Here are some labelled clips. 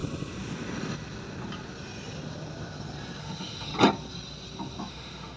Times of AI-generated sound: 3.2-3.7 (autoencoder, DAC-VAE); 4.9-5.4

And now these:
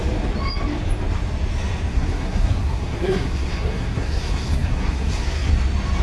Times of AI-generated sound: 1.9-5.5 (codec, SNAC)

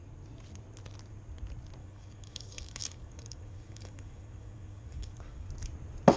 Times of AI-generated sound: 1.8-5.5 (codec, DAC)